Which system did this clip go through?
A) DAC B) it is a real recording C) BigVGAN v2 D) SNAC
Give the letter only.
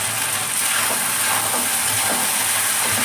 B